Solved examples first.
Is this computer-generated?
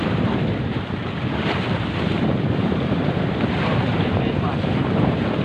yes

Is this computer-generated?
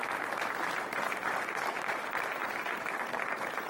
yes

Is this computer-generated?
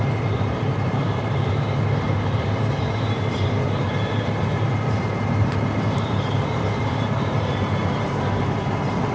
yes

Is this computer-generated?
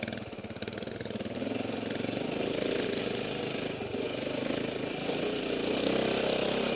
no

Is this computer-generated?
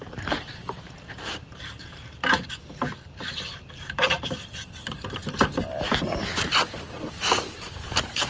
yes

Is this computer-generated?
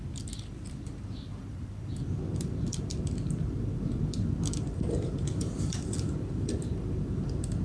yes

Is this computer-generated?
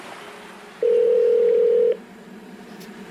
yes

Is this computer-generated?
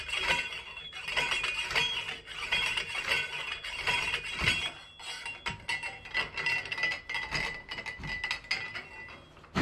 no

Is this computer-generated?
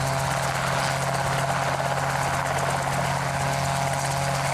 no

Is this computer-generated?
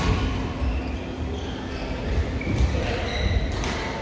no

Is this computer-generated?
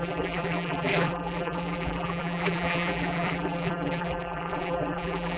yes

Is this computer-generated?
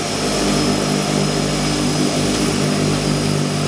no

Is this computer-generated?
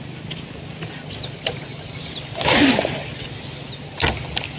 no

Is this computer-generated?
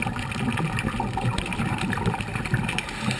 no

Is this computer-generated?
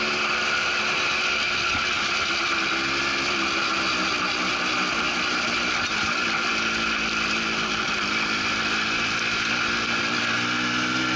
no